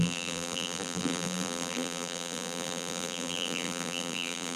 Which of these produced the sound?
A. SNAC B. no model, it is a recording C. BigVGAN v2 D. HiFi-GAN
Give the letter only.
C